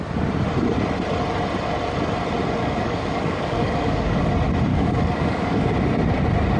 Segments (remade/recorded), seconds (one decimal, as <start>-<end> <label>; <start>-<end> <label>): 0.0-2.6 recorded; 2.6-4.2 remade; 4.2-4.7 recorded; 4.7-5.7 remade; 5.7-6.6 recorded